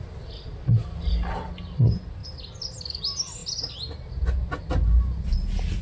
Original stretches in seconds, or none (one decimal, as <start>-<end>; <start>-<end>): 0.0-5.8